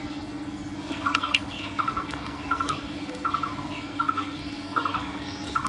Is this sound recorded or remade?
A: remade